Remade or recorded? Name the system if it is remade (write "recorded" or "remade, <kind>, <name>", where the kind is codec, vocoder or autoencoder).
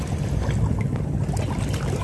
recorded